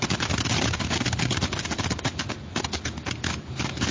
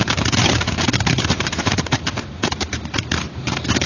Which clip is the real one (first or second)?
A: first